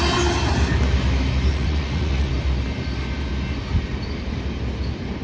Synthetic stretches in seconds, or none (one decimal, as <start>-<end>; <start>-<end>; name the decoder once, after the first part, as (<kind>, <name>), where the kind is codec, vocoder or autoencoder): 1.5-2.3 (vocoder, Vocos)